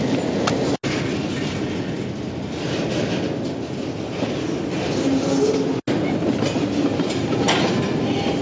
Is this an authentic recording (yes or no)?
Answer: yes